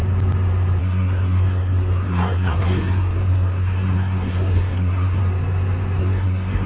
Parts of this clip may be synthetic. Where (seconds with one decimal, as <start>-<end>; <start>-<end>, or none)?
0.8-5.2; 6.0-6.7